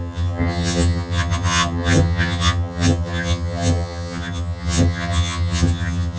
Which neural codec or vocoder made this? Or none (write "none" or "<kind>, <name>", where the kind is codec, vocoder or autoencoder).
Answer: vocoder, HiFi-GAN